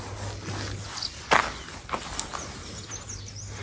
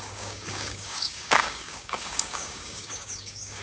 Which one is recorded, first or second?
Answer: first